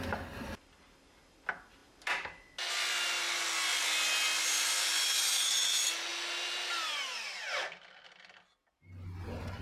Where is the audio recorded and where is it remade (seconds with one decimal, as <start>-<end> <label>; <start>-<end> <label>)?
0.0-9.6 recorded

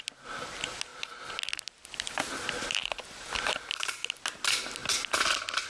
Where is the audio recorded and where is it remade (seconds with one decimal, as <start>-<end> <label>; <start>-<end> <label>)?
0.0-5.7 recorded

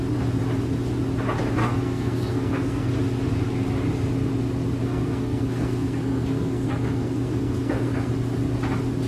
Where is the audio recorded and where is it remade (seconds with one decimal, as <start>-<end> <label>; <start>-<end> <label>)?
0.0-1.6 recorded; 1.6-2.9 remade; 2.9-4.8 recorded; 4.8-8.1 remade; 8.1-9.1 recorded

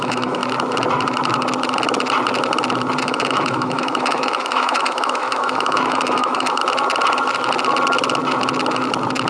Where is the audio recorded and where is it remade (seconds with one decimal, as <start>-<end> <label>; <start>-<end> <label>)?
0.0-0.4 remade; 0.4-3.0 recorded; 3.0-6.6 remade; 6.6-9.3 recorded